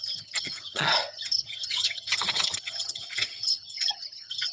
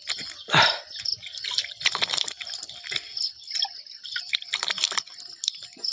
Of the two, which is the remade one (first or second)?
first